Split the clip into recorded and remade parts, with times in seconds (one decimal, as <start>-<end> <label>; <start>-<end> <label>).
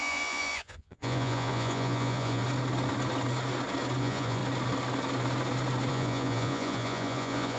0.0-2.4 remade; 2.4-4.0 recorded; 4.0-4.4 remade; 4.4-5.9 recorded; 5.9-7.6 remade